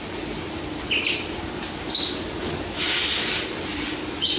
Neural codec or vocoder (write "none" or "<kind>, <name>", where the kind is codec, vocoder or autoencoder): none